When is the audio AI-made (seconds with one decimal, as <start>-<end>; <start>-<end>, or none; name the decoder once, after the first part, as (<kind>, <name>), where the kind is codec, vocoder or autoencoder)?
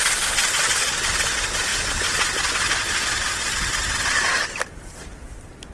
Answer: none